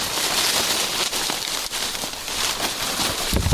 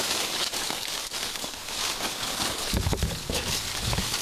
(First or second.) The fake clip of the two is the second